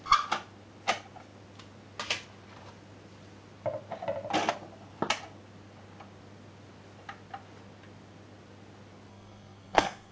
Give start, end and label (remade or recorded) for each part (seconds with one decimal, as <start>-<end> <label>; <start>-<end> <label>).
0.0-9.1 recorded; 9.1-10.1 remade